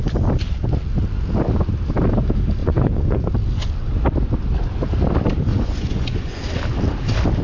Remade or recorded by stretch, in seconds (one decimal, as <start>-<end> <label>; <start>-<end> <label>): 0.0-2.6 recorded; 2.6-3.3 remade; 3.3-5.5 recorded; 5.5-6.4 remade; 6.4-7.4 recorded

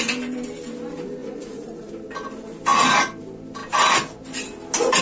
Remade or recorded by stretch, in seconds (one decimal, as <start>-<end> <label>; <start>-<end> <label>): 0.0-1.2 recorded; 1.2-1.9 remade; 1.9-5.0 recorded

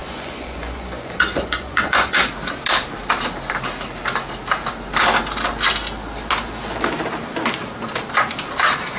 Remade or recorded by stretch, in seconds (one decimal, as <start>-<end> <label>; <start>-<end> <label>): 0.0-2.2 remade; 2.2-9.0 recorded

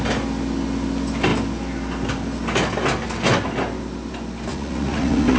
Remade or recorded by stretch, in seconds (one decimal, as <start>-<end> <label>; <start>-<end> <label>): 0.0-4.5 recorded; 4.5-5.4 remade

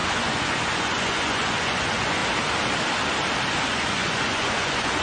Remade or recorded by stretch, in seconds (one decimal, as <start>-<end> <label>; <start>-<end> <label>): 0.0-2.2 remade; 2.2-3.7 recorded; 3.7-5.0 remade

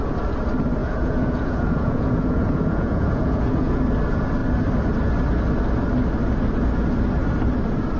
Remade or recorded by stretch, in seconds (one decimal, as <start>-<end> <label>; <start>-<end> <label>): 0.0-0.8 recorded; 0.8-3.8 remade; 3.8-8.0 recorded